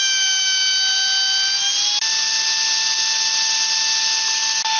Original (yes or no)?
yes